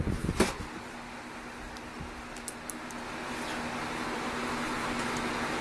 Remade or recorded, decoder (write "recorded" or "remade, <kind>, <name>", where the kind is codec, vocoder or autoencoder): recorded